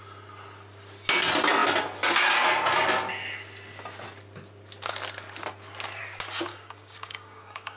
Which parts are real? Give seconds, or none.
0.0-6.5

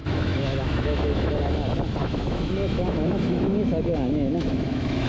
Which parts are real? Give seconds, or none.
1.3-2.0

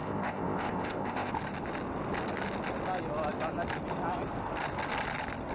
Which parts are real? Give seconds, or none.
1.3-5.5

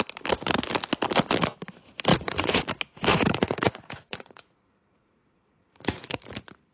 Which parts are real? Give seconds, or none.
0.0-2.1; 2.7-3.1; 6.2-6.7

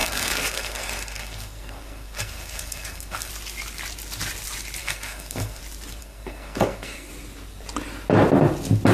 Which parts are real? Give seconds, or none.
3.3-4.8; 5.6-6.0; 7.1-8.9

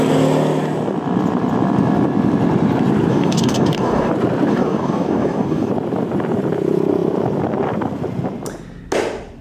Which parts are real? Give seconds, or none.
0.0-3.1; 4.1-4.5; 5.7-9.4

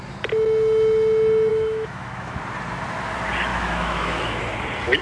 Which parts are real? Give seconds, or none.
0.0-1.5; 2.4-3.5; 4.4-5.0